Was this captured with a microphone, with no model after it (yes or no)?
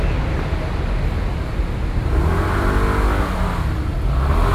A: yes